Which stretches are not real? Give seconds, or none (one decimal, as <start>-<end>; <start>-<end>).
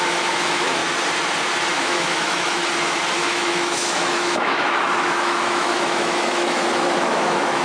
0.0-0.8; 1.7-2.6; 3.2-7.6